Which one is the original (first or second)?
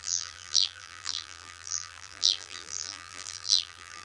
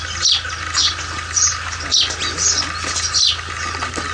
second